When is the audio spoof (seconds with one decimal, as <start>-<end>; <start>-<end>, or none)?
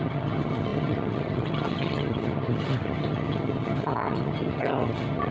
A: 0.0-5.3